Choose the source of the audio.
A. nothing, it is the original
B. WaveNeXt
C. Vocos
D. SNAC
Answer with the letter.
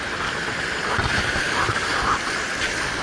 A